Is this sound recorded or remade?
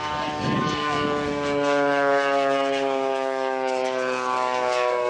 remade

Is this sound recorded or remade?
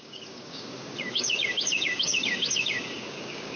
remade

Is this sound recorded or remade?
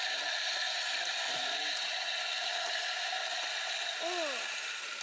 recorded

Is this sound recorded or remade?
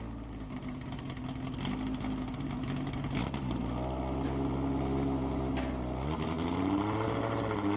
recorded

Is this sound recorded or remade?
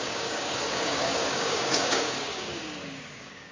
remade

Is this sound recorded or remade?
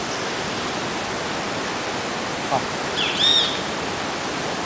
recorded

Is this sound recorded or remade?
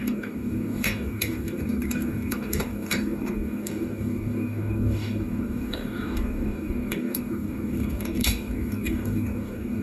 remade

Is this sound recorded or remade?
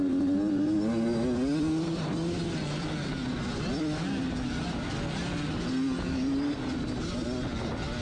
recorded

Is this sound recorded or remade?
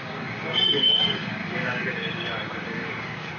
remade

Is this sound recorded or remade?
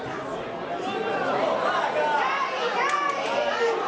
recorded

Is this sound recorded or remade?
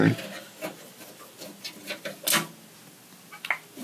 recorded